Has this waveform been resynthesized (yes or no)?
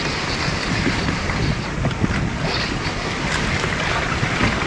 no